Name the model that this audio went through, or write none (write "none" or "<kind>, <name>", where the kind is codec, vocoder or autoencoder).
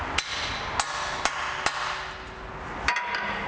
none